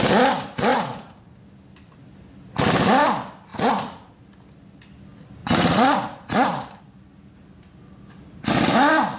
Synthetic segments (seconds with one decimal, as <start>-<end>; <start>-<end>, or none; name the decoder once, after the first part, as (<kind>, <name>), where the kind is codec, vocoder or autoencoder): 0.7-1.3 (vocoder, Vocos); 3.5-4.2; 5.4-6.8